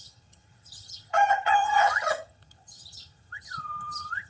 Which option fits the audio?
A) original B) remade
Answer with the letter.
B